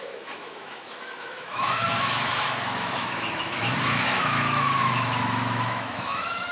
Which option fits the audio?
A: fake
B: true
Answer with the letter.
A